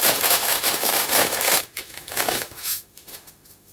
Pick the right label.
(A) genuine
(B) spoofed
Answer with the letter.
B